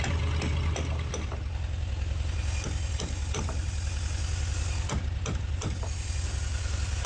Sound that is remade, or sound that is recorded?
recorded